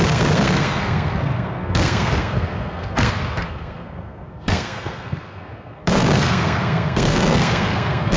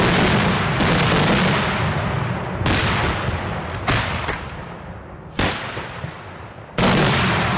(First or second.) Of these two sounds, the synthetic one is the first